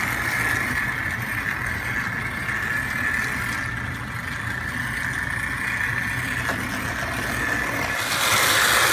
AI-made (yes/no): no